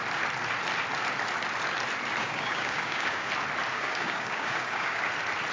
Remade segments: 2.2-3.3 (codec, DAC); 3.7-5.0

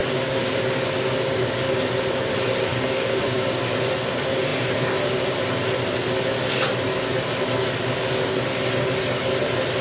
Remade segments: 0.0-0.5 (codec, DAC); 2.7-3.6

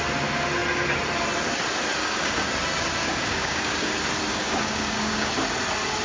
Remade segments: 2.0-2.5 (codec, DAC); 3.0-3.9; 4.3-5.3